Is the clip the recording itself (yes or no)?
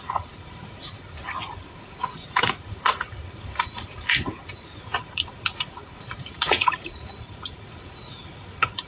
no